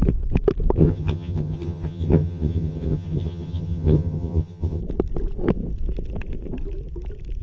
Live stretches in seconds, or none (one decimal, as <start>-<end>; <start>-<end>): 0.0-0.8; 4.8-7.4